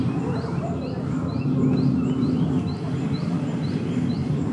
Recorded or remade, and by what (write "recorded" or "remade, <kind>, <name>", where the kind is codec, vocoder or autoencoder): recorded